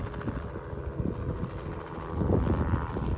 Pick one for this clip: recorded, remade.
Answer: recorded